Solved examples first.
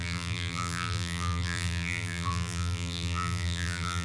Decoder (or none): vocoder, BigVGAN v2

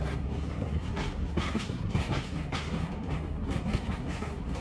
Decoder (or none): codec, SNAC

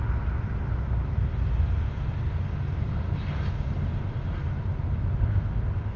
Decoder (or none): none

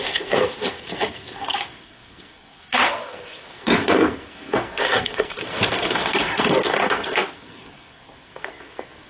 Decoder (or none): codec, SNAC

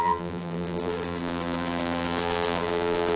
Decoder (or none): vocoder, BigVGAN v2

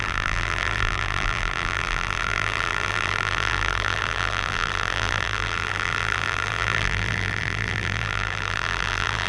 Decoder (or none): vocoder, BigVGAN v2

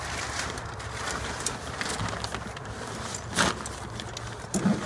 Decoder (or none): none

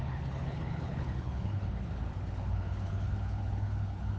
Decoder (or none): codec, HILCodec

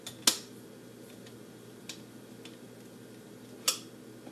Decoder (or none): none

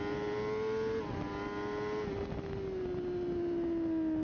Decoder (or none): none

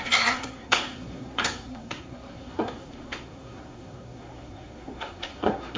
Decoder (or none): codec, SNAC